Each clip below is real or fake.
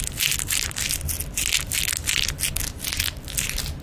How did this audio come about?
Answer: real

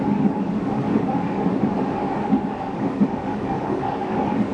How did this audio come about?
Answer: fake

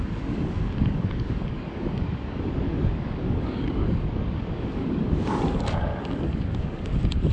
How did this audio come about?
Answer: fake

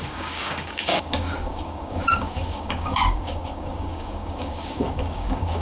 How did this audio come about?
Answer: fake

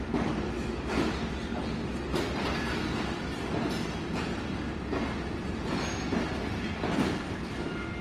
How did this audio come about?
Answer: real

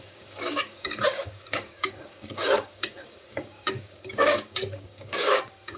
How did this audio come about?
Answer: fake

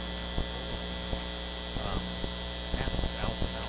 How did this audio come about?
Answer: real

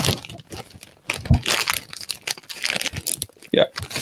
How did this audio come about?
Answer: real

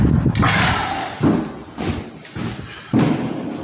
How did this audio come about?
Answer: real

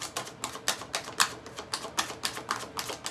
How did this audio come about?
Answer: real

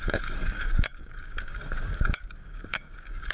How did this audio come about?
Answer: fake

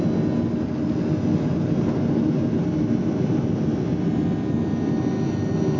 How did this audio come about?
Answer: real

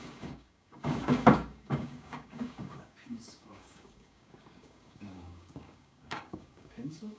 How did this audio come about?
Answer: fake